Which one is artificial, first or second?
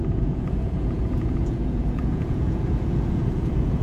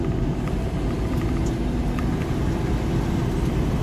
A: first